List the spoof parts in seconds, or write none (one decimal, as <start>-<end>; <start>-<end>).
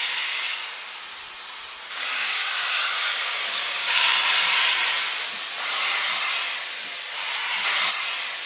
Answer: 0.0-0.6; 1.9-4.2